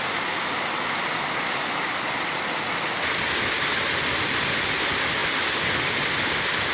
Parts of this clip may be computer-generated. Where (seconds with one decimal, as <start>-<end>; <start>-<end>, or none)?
none